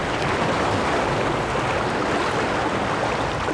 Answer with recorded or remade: recorded